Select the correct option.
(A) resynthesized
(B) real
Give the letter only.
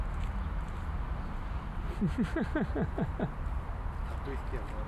B